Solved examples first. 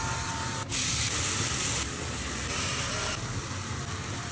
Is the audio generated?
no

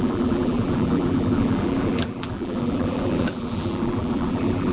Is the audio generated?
yes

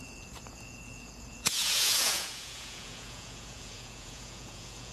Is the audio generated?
yes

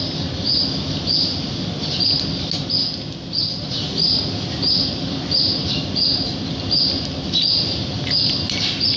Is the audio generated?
no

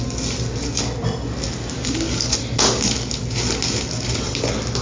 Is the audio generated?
no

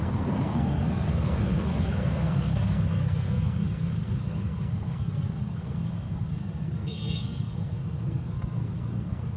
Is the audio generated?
yes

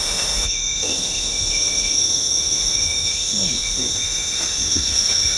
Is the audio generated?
yes